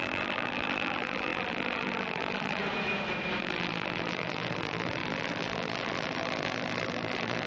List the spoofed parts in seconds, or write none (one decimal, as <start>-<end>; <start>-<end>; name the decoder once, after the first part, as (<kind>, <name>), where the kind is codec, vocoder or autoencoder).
0.0-2.6 (vocoder, BigVGAN v2); 3.4-7.5